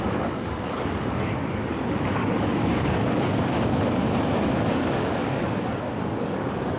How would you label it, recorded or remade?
remade